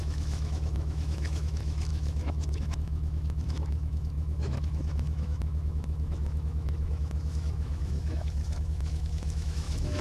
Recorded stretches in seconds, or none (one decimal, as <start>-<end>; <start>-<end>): none